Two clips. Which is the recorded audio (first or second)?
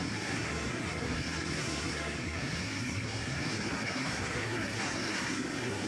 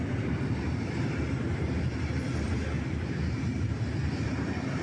second